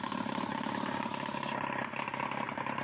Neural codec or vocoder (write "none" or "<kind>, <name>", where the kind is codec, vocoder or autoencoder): vocoder, BigVGAN v2